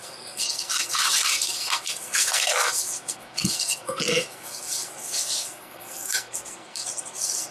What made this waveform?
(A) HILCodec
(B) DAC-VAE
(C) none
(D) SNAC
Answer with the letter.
D